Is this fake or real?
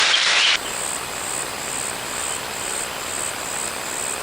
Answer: real